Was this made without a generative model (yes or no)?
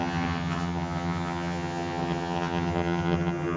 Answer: no